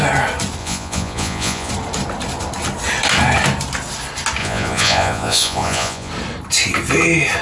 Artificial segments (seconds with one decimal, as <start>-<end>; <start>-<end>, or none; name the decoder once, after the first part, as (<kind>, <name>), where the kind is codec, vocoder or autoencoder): 0.6-1.7 (vocoder, Vocos); 4.4-6.1